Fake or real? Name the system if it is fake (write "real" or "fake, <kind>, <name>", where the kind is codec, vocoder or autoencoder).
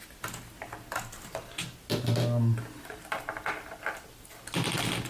real